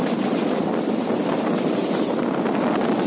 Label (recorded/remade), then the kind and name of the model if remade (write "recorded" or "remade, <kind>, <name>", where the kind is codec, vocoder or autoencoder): recorded